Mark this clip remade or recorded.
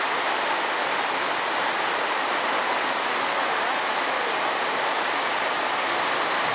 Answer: recorded